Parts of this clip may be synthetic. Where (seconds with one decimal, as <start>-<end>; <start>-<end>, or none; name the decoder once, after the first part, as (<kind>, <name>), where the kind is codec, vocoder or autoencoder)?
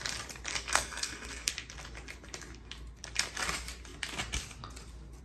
0.5-1.5 (codec, SNAC)